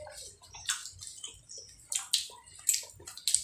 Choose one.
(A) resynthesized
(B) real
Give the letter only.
B